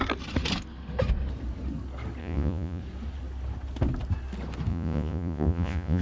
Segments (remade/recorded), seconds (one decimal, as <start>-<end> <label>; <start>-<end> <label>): 0.0-2.2 recorded; 2.2-2.8 remade; 2.8-4.7 recorded; 4.7-6.0 remade